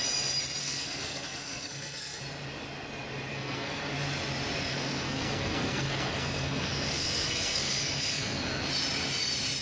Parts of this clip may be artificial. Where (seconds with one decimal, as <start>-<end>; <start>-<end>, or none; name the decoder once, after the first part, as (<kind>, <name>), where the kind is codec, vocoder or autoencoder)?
0.6-2.2 (codec, SNAC); 3.3-3.8; 4.7-8.7